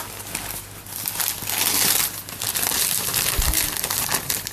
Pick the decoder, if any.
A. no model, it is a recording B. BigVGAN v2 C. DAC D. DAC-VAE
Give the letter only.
A